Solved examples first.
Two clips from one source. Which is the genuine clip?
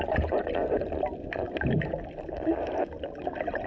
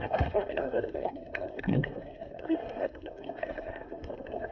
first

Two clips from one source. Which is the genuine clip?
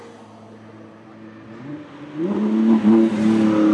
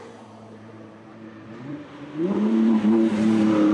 first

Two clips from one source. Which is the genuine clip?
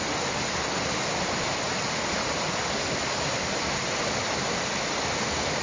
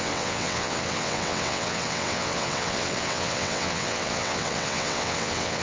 first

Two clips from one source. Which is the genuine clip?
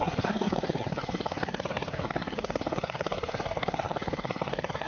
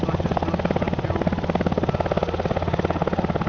second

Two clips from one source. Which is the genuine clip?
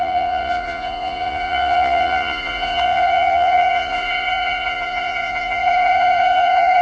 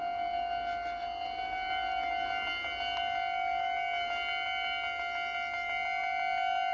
second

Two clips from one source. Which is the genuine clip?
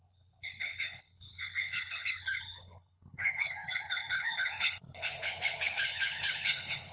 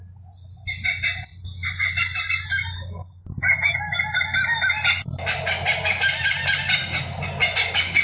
second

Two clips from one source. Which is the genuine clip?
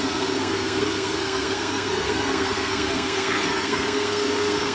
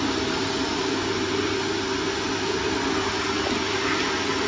second